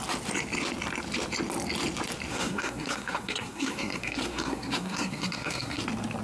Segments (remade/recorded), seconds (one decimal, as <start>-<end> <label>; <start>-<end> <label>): 0.0-2.3 recorded; 2.3-5.8 remade; 5.8-6.2 recorded